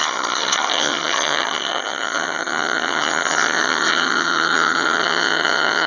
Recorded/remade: remade